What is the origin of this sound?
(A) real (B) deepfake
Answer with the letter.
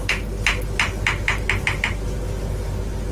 A